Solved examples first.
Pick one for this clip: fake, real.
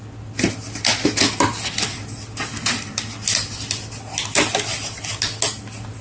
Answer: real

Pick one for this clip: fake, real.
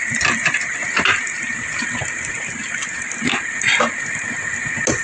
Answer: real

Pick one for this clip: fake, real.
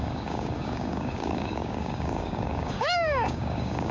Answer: fake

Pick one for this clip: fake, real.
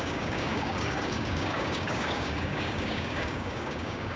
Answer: fake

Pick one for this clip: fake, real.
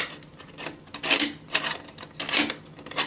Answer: real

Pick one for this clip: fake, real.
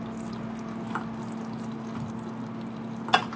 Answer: real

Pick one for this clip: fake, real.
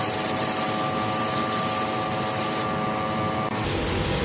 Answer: real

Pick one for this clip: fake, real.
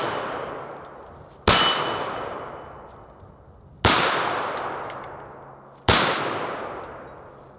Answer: real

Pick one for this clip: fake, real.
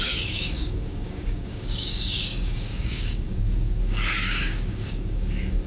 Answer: fake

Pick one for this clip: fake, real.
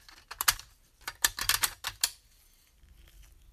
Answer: real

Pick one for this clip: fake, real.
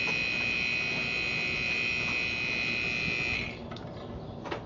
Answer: real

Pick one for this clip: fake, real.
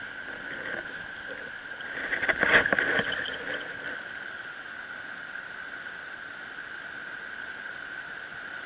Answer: real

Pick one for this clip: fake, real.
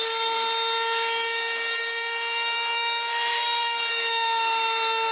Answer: fake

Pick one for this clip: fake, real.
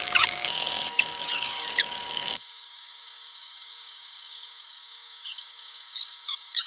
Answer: fake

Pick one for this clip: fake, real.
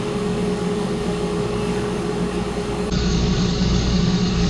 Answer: fake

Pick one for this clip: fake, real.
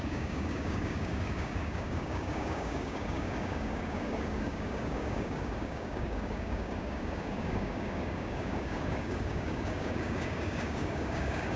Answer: fake